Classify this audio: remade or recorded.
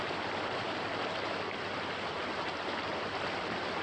recorded